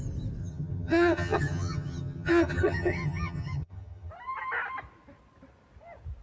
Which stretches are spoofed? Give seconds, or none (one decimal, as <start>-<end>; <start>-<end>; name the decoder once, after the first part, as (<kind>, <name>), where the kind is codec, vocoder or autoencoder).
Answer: 0.4-4.1 (vocoder, HiFi-GAN)